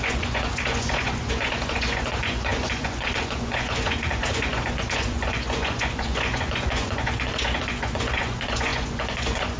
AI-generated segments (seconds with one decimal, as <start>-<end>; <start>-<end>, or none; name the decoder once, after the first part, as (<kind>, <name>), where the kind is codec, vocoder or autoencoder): 0.0-9.6 (vocoder, Vocos)